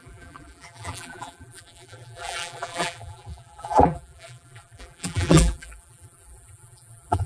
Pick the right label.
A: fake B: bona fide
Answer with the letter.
A